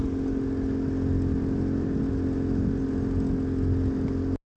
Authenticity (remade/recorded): recorded